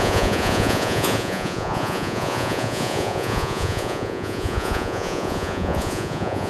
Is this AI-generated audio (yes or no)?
yes